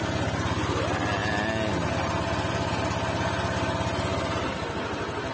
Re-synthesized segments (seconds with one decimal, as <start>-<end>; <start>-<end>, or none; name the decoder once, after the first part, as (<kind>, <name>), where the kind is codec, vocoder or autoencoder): none